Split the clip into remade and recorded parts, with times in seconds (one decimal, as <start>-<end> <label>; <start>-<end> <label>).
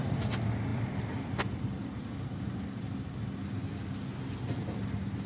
0.0-5.3 recorded